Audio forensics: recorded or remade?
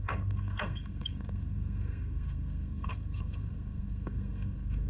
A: remade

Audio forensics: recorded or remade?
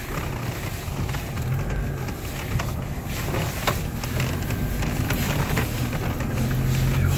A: recorded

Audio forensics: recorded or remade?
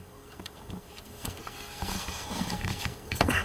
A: remade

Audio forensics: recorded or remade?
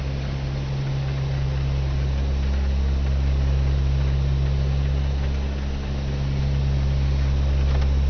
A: recorded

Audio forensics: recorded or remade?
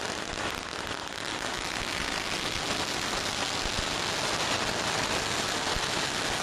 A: recorded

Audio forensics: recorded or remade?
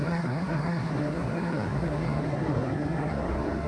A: remade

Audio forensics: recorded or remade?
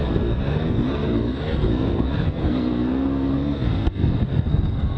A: remade